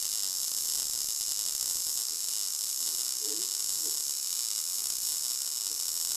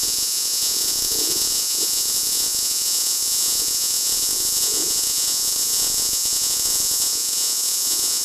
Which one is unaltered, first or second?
first